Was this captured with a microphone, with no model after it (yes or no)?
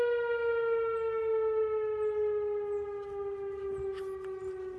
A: yes